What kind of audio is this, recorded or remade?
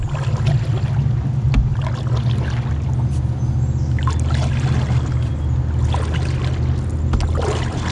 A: recorded